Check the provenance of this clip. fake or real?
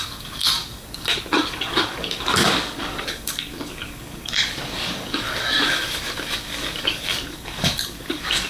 fake